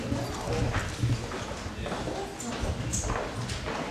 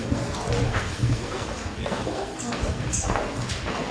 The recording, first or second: first